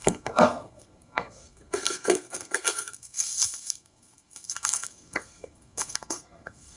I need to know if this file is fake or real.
fake